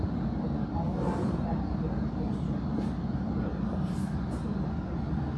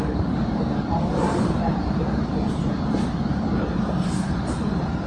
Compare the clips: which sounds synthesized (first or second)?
second